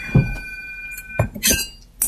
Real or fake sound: real